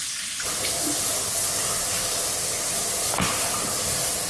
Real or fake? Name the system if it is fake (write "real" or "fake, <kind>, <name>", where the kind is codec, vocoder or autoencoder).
real